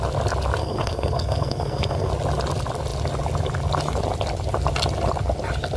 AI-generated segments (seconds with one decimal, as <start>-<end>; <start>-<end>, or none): 0.6-2.1